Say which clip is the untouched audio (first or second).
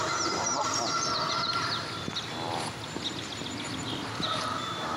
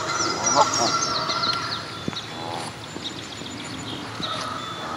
second